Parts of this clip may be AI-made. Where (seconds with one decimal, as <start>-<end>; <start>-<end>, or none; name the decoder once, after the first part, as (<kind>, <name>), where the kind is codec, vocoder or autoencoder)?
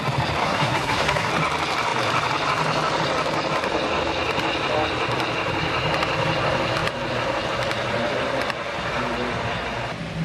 0.4-1.3 (codec, SNAC)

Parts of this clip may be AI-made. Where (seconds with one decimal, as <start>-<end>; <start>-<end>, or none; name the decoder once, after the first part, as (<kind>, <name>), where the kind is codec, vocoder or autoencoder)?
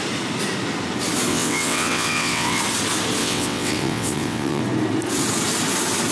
1.3-2.6 (vocoder, WaveNeXt); 3.2-4.6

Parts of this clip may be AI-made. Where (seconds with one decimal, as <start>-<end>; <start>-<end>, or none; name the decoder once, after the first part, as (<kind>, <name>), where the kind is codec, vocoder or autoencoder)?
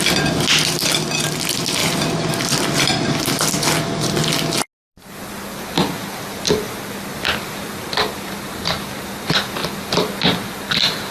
1.8-2.3 (vocoder, BigVGAN v2)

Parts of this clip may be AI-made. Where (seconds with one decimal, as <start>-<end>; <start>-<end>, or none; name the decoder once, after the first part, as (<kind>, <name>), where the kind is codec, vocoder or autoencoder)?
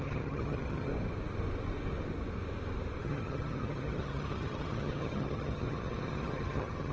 0.0-0.9 (vocoder, HiFi-GAN); 3.0-6.9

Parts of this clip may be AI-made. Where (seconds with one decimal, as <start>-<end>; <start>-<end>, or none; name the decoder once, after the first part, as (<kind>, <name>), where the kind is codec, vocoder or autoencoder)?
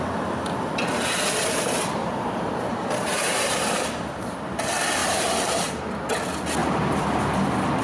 2.0-4.0 (vocoder, BigVGAN v2); 5.0-5.8; 6.6-7.2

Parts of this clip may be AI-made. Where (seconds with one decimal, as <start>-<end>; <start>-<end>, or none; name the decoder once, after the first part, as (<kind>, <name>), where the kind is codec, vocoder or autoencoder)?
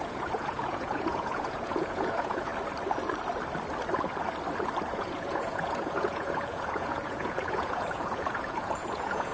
0.0-2.5 (vocoder, Vocos); 4.9-9.3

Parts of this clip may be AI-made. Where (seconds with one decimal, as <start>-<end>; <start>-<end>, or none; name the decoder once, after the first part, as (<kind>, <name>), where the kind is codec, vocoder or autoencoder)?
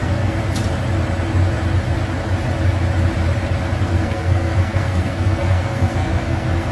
0.0-0.4 (codec, SNAC); 3.8-6.7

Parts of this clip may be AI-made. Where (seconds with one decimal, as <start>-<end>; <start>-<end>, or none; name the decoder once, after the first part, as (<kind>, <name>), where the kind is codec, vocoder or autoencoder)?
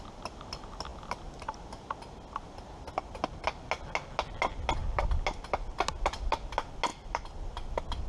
6.9-7.5 (vocoder, BigVGAN v2)